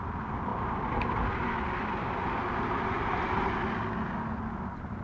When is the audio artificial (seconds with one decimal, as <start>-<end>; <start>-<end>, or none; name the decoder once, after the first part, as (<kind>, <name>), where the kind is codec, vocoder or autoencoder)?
none